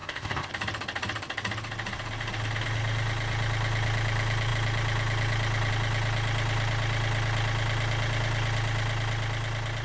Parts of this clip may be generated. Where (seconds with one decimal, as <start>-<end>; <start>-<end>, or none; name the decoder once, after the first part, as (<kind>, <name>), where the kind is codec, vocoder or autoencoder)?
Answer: 0.0-0.5 (codec, ZipCodec)